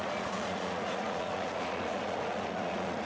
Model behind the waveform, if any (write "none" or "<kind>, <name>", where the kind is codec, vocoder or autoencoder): vocoder, Vocos